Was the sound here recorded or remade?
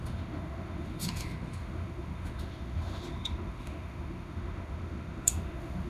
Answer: remade